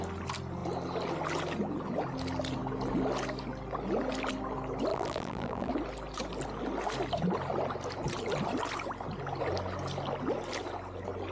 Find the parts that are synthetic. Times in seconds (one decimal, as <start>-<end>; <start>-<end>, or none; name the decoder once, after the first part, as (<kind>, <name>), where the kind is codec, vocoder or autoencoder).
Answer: 4.9-5.7 (vocoder, BigVGAN v2)